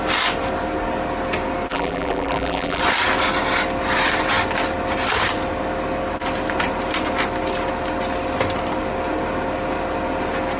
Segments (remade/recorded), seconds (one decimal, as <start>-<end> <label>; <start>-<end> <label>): 0.0-1.7 recorded; 1.7-2.8 remade; 2.8-10.6 recorded